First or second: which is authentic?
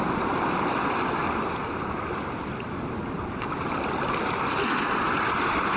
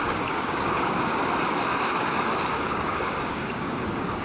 first